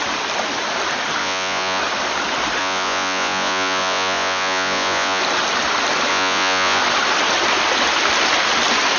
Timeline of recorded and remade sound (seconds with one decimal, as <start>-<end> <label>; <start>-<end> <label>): 0.0-1.2 recorded; 1.2-1.8 remade; 1.8-2.6 recorded; 2.6-5.2 remade; 5.2-6.1 recorded; 6.1-6.8 remade; 6.8-9.0 recorded